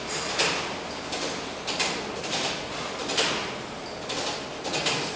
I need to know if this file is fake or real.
real